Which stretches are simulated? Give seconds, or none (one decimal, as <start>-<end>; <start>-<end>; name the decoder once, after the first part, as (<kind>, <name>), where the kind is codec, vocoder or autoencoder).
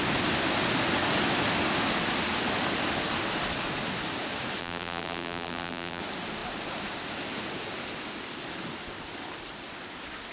4.6-6.0 (vocoder, BigVGAN v2)